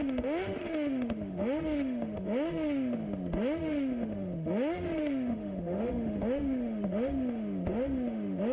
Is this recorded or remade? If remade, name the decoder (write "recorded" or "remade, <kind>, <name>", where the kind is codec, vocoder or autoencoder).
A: remade, autoencoder, DAC-VAE